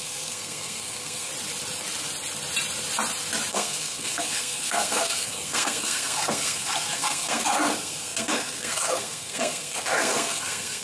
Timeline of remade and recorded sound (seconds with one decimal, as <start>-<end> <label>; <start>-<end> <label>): 0.0-1.3 remade; 1.3-3.5 recorded; 3.5-10.8 remade